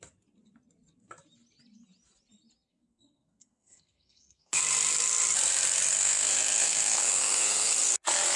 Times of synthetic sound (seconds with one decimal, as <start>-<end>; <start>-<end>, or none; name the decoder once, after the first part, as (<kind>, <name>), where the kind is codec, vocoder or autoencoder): 2.7-4.6 (codec, SNAC); 6.0-7.7